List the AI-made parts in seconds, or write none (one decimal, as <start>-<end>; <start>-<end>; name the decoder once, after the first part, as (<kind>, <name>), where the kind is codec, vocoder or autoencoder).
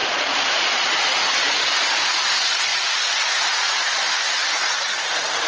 0.0-1.0 (vocoder, Vocos); 2.7-3.3